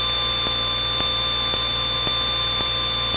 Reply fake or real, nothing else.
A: real